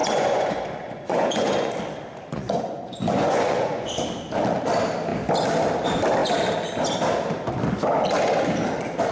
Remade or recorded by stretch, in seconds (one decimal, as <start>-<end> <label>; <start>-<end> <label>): 0.0-1.7 remade; 1.7-2.3 recorded; 2.3-3.9 remade; 3.9-9.1 recorded